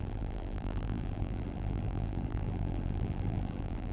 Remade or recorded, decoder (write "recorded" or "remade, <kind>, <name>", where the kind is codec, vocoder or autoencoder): remade, vocoder, BigVGAN v2